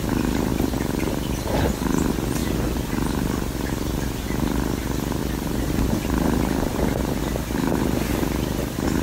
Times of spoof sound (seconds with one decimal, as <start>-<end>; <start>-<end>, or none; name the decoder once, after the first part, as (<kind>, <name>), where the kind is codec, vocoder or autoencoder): 5.2-7.2 (vocoder, BigVGAN v2)